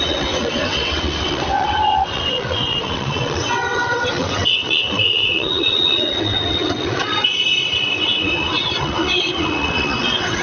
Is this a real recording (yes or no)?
no